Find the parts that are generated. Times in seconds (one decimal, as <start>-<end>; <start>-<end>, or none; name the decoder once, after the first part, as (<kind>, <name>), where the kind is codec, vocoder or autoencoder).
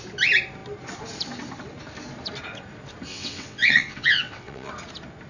3.1-4.7 (vocoder, WaveNeXt)